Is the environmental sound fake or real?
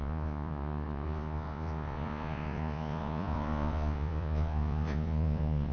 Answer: fake